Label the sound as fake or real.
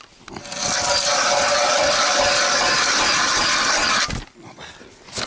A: real